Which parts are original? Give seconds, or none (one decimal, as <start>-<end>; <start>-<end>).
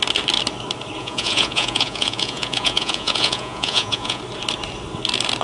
0.0-1.0; 4.2-5.4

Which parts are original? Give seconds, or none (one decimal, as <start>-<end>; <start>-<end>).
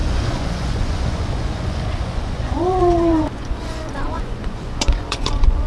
none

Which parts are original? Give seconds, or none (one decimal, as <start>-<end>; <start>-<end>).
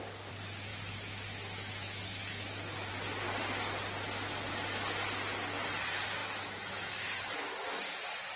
0.0-0.7; 2.9-6.2; 7.7-8.4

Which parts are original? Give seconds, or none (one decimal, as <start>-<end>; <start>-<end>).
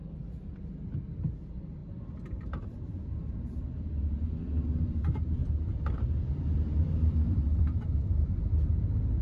0.0-1.8; 3.2-5.4; 8.3-9.2